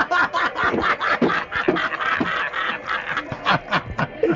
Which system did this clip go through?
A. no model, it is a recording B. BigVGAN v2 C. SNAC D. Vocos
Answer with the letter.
A